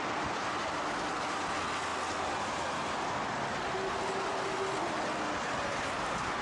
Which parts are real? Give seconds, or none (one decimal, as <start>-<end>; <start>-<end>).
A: 0.0-6.4